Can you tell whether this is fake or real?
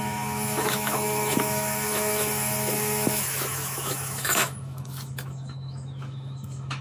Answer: fake